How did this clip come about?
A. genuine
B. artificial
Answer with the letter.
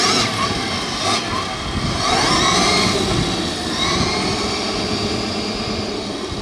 A